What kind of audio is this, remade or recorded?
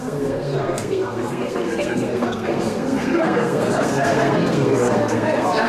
remade